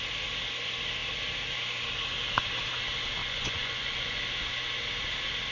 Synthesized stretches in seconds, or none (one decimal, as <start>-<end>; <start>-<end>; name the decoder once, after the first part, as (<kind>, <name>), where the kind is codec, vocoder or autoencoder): 3.2-4.2 (vocoder, Vocos)